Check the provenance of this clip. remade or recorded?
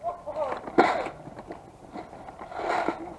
recorded